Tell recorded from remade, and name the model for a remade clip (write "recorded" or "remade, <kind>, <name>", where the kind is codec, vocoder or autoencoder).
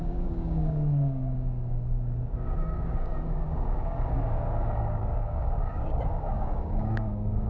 remade, codec, DAC